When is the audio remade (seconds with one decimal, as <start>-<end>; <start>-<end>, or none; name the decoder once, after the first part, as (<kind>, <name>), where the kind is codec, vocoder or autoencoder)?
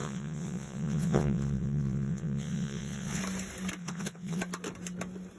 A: 0.0-3.2 (vocoder, WaveNeXt); 3.8-4.4